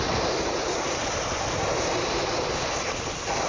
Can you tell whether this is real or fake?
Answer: real